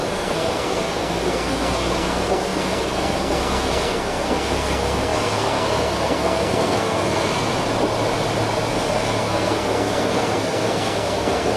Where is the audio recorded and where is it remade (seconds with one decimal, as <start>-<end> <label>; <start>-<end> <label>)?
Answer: 0.0-7.5 remade; 7.5-8.7 recorded; 8.7-11.6 remade